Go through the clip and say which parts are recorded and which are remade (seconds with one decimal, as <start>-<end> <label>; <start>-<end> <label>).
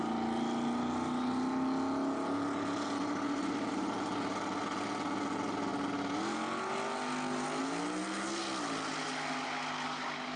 0.0-10.4 recorded